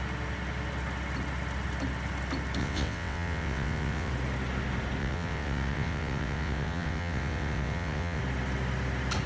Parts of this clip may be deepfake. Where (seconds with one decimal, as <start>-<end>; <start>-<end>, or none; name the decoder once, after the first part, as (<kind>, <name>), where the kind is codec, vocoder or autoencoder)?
2.6-4.1 (vocoder, WaveNeXt); 5.0-8.2